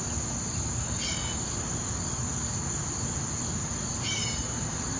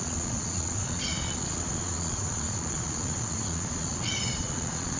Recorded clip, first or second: first